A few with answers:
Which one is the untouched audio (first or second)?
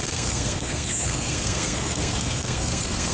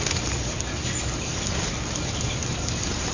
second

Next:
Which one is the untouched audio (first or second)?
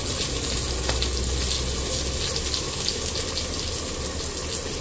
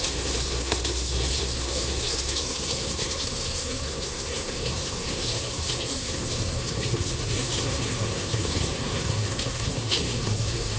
first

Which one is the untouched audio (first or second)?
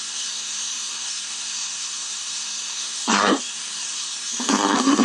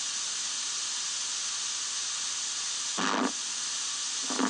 second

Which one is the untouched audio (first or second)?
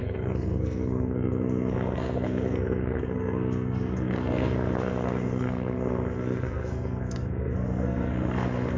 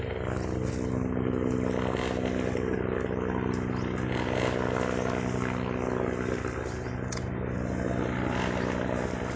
second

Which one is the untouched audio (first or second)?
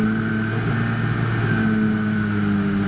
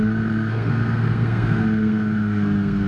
first